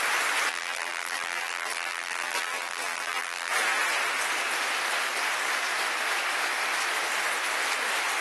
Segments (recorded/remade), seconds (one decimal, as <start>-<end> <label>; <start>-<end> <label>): 0.0-0.5 recorded; 0.5-3.5 remade; 3.5-8.2 recorded